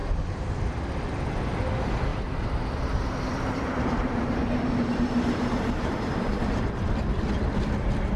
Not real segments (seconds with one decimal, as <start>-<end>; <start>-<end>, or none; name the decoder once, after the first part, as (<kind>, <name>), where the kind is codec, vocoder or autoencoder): 2.1-6.7 (vocoder, BigVGAN v2)